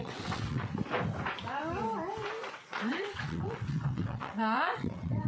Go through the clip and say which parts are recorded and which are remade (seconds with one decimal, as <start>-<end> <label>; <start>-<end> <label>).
0.0-0.7 remade; 0.7-2.4 recorded; 2.4-5.3 remade